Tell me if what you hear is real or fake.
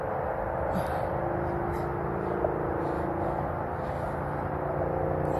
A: real